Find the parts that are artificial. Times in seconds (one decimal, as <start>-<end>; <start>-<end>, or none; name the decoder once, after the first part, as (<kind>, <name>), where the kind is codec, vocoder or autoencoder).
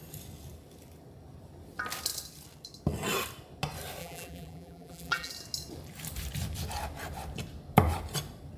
4.0-5.3 (vocoder, BigVGAN v2)